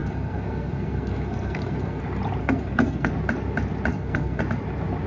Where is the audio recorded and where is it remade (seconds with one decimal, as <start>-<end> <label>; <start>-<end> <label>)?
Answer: 0.0-2.0 remade; 2.0-2.4 recorded; 2.4-3.1 remade; 3.1-3.9 recorded; 3.9-4.4 remade; 4.4-5.1 recorded